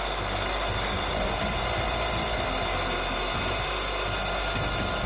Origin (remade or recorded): recorded